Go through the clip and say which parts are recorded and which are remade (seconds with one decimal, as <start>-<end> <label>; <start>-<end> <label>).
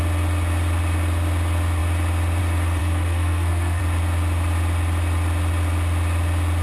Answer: 0.0-2.8 recorded; 2.8-3.8 remade; 3.8-6.6 recorded